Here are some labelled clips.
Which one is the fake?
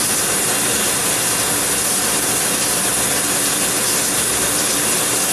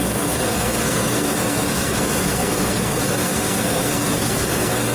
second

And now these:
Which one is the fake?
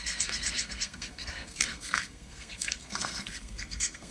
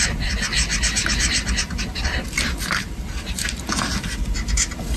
first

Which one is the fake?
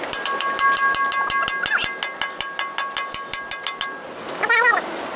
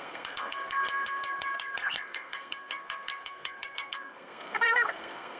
second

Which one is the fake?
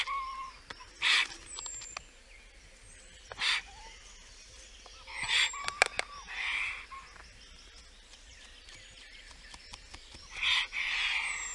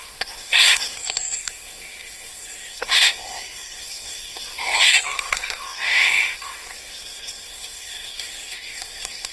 second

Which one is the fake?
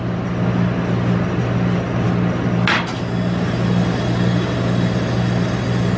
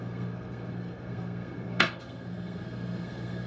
second